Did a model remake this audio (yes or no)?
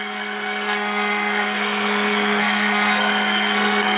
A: yes